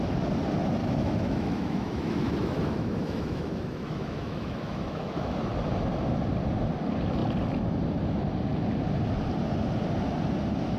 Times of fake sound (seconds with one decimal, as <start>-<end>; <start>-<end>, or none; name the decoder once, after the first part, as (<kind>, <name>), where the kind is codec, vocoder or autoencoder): 0.8-5.4 (autoencoder, DAC-VAE)